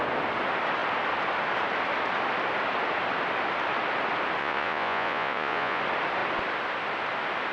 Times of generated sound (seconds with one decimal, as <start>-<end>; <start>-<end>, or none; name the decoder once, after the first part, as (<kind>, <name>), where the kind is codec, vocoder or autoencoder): 4.4-5.8 (vocoder, Vocos)